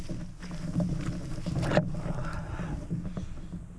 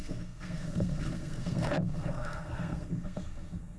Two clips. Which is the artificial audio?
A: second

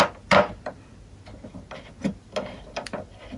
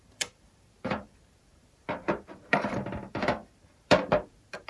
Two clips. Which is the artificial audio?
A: second